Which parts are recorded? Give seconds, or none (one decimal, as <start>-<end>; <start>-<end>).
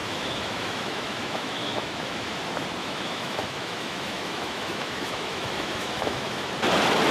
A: 2.4-2.8; 6.5-7.1